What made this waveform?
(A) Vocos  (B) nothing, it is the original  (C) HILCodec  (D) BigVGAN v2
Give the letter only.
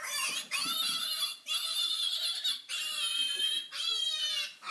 B